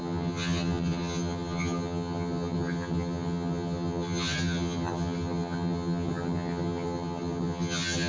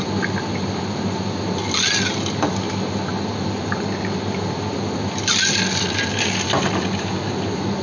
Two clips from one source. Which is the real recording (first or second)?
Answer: second